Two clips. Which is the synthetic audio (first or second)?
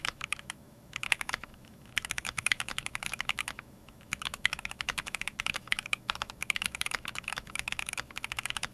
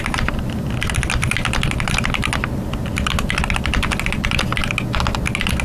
first